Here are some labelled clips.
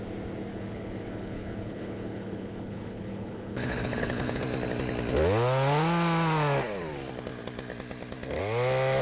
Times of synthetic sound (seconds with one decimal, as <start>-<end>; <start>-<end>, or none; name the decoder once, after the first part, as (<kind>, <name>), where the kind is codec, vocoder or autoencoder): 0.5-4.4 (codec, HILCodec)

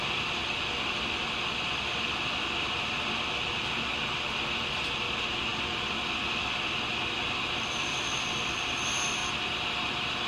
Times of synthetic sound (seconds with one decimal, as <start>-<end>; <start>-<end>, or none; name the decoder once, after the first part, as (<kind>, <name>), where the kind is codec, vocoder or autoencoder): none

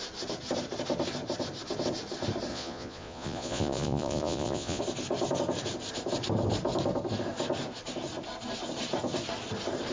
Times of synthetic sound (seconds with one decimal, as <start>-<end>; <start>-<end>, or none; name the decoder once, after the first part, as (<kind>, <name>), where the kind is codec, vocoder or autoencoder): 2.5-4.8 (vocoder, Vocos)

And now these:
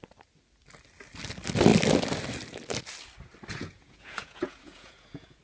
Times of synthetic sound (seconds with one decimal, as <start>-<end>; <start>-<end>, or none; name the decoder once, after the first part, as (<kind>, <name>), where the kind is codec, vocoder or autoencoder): 3.5-5.4 (vocoder, Vocos)

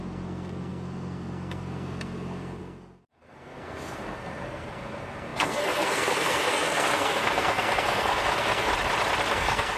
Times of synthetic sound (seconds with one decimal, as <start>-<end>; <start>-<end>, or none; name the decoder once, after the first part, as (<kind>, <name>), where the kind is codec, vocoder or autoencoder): 0.0-8.7 (codec, SNAC); 9.3-9.8